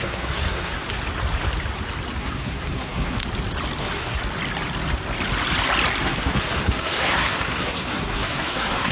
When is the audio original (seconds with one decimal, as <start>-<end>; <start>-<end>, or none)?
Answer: 0.7-2.2; 3.2-3.8; 4.2-6.0